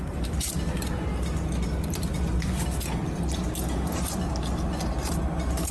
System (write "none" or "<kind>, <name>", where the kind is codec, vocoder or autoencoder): none